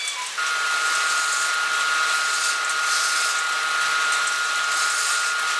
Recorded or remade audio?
recorded